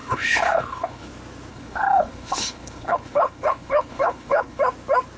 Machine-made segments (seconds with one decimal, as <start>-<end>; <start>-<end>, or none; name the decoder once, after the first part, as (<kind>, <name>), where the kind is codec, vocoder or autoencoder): 0.0-1.1 (codec, HILCodec); 1.5-4.6